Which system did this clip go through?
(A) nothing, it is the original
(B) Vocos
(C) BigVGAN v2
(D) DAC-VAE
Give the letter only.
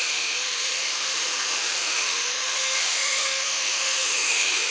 D